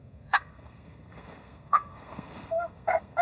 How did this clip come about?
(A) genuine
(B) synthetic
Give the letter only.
B